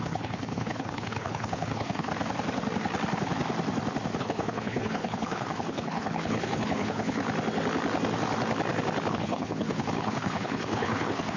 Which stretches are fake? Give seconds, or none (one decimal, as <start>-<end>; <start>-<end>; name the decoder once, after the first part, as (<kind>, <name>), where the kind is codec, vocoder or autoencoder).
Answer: 0.0-2.1 (codec, HILCodec); 4.2-7.2; 9.1-11.4